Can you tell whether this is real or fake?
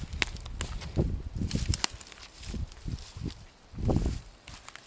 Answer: real